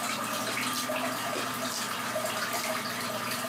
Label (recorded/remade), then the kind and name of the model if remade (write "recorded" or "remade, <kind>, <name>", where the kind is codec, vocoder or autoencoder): recorded